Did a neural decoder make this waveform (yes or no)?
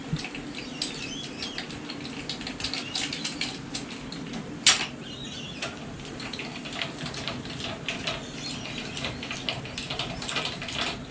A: no